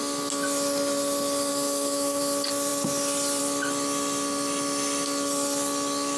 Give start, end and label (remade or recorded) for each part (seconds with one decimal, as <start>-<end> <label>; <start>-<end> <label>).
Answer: 0.0-1.5 recorded; 1.5-2.2 remade; 2.2-6.2 recorded